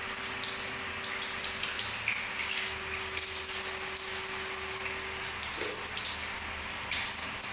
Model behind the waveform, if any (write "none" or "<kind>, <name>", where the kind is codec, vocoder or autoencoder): none